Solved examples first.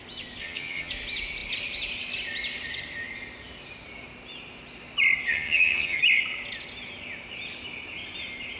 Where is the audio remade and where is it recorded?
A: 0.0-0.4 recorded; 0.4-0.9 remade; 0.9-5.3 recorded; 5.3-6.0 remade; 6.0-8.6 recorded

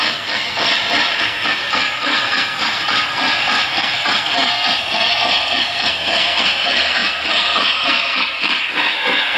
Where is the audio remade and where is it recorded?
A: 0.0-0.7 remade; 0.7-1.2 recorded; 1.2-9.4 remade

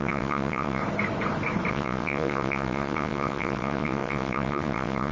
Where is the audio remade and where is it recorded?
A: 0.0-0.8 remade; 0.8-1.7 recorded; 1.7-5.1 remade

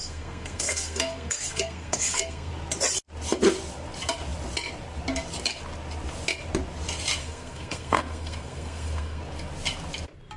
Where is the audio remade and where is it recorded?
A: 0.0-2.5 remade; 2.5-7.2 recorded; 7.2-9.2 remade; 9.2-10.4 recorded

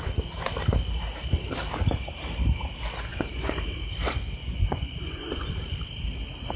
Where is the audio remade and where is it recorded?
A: 0.0-3.1 recorded; 3.1-3.6 remade; 3.6-4.4 recorded; 4.4-5.5 remade; 5.5-6.6 recorded

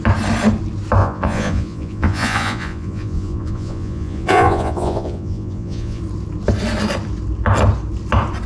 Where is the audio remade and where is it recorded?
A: 0.0-1.0 recorded; 1.0-6.0 remade; 6.0-8.5 recorded